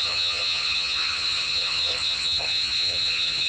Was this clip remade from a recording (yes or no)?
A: yes